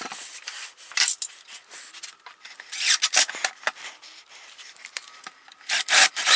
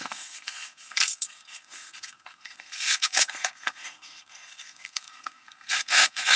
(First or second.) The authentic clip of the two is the first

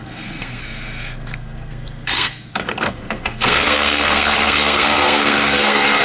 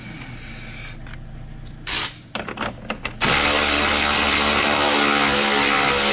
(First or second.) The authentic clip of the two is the second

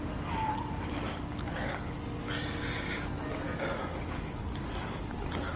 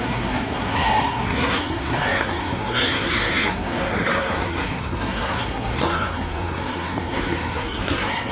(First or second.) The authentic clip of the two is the first